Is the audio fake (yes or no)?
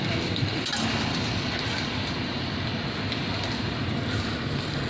no